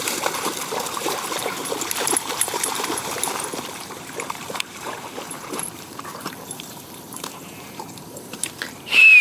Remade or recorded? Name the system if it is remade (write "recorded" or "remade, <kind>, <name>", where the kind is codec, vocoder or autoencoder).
remade, vocoder, BigVGAN v2